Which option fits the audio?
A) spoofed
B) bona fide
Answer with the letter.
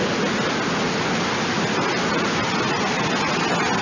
B